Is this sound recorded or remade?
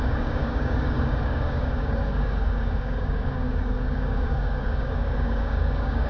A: remade